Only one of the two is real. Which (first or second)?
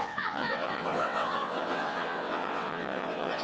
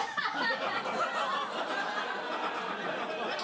second